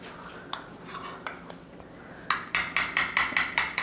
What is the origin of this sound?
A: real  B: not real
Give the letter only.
A